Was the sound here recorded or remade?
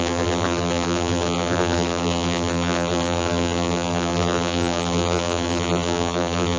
remade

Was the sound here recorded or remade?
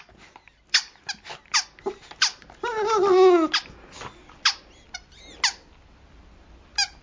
recorded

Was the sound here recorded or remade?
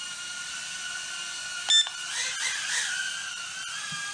recorded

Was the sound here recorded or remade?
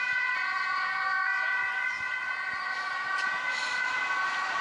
recorded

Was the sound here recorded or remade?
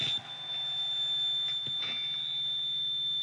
recorded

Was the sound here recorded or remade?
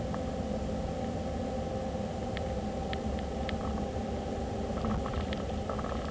recorded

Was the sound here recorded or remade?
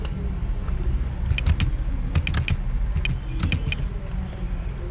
recorded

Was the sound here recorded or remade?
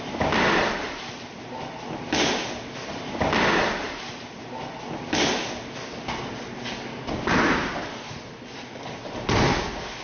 recorded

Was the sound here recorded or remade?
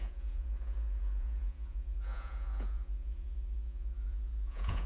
remade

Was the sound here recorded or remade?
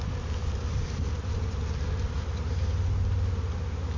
recorded